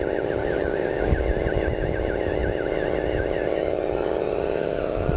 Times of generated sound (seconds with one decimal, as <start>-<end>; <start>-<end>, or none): 0.4-1.2